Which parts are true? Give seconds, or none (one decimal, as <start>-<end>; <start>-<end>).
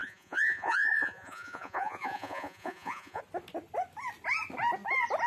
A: 3.2-5.3